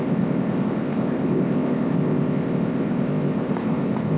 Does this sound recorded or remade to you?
remade